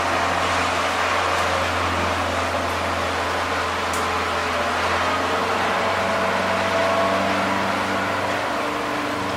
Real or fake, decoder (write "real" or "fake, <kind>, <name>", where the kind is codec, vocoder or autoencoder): real